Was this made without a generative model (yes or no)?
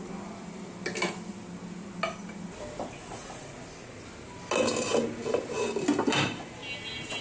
yes